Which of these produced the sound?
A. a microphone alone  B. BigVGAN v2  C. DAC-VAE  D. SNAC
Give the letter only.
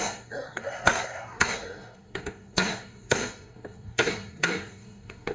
D